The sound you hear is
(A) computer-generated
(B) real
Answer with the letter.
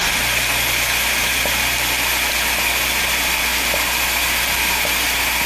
B